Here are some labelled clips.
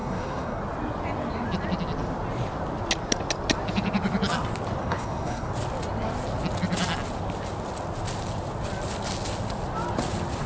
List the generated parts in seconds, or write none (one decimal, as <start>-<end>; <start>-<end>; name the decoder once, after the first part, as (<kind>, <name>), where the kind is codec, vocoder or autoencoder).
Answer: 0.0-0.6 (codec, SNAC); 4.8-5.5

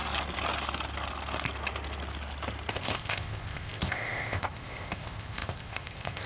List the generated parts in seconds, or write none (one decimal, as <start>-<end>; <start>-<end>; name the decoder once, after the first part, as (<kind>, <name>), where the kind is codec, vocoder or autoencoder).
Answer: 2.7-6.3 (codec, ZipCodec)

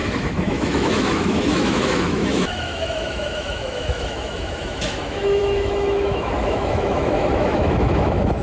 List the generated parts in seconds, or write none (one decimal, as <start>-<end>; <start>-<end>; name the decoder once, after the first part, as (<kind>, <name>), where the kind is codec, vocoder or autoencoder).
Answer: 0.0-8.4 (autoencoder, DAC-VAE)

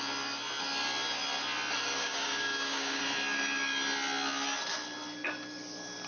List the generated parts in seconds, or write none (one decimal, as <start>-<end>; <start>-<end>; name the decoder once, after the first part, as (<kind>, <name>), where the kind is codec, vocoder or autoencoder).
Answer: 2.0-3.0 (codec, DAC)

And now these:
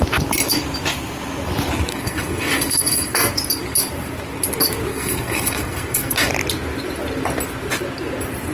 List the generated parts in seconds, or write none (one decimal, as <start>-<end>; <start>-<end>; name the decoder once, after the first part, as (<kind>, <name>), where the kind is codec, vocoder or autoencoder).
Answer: 1.9-3.3 (codec, SNAC); 4.9-6.3